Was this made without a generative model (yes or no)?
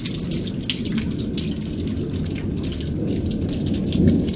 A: yes